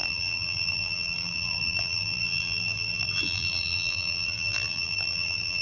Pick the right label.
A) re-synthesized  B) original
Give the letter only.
A